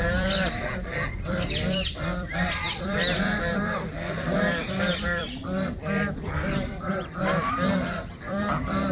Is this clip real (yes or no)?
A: no